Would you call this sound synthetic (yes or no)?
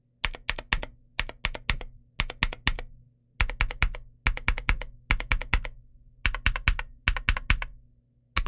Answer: no